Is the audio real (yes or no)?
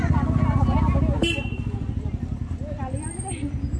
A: yes